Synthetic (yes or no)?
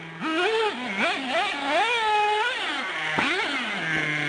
no